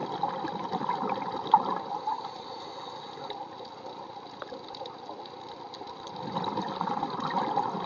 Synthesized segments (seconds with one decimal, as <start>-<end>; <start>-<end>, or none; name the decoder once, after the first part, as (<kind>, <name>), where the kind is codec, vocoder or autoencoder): none